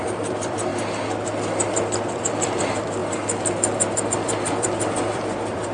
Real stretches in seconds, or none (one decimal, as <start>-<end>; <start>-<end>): 0.7-2.1; 3.0-4.0